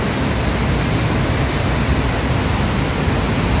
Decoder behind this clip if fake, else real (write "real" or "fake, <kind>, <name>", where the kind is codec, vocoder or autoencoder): real